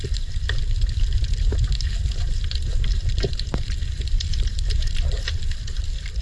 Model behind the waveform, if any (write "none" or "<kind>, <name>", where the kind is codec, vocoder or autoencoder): vocoder, BigVGAN v2